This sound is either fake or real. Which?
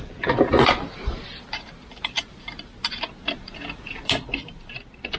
real